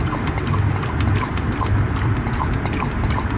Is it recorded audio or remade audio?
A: remade